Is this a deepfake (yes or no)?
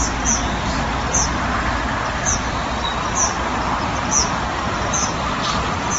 no